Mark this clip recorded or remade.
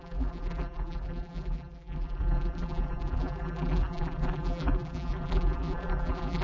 remade